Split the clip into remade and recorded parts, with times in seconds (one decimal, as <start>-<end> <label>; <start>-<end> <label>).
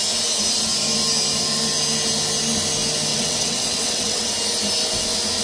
0.0-3.1 recorded; 3.1-4.3 remade; 4.3-5.4 recorded